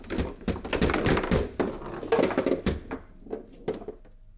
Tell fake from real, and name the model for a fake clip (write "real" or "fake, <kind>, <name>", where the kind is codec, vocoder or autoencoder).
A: real